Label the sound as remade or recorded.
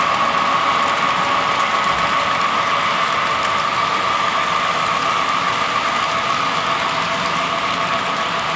recorded